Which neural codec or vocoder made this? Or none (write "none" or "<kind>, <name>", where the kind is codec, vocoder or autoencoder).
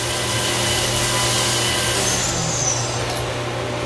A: none